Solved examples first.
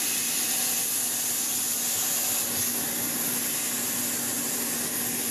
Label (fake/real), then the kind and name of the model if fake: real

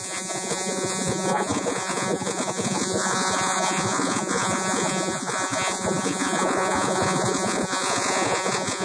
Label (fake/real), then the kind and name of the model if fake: fake, vocoder, Vocos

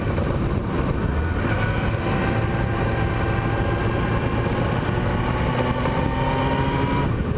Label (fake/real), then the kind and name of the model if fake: real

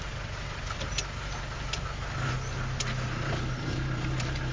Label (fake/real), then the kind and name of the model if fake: real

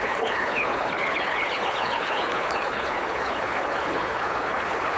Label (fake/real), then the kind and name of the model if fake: fake, codec, HILCodec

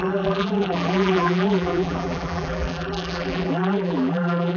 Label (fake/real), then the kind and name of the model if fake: fake, vocoder, BigVGAN v2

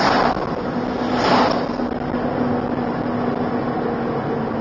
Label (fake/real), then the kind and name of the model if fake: real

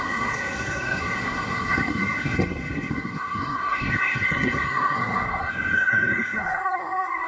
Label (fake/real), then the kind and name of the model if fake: fake, codec, SNAC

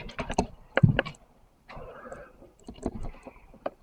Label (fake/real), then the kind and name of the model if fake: fake, vocoder, BigVGAN v2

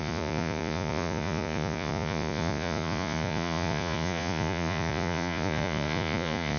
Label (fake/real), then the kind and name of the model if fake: fake, vocoder, Vocos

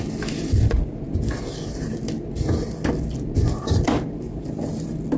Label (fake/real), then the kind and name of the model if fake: real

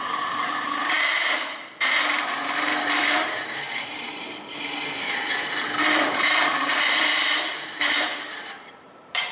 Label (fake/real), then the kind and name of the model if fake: fake, vocoder, BigVGAN v2